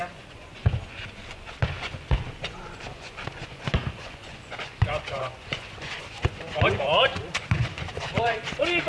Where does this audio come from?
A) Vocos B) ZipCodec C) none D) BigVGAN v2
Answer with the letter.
A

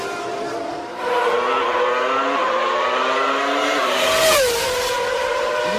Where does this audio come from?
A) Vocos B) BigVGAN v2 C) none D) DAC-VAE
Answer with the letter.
C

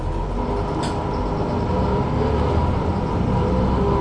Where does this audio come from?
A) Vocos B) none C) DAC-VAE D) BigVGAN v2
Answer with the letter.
B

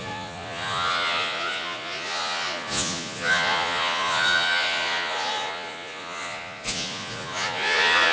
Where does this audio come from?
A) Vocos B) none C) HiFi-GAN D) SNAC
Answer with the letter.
A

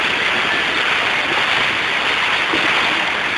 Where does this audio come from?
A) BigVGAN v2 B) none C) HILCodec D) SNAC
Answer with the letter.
B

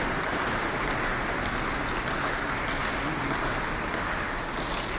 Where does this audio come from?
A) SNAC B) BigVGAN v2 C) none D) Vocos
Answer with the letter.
C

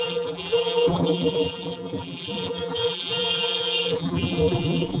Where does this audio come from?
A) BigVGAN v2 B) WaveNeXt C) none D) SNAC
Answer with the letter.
A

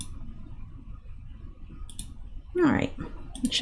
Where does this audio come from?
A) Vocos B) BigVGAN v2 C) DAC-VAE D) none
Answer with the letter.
D